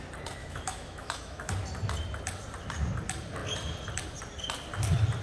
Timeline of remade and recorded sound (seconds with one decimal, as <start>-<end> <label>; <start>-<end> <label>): 0.0-0.4 recorded; 0.4-1.5 remade; 1.5-5.2 recorded